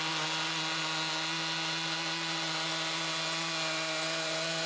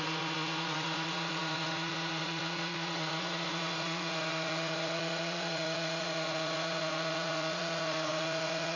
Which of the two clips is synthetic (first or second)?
second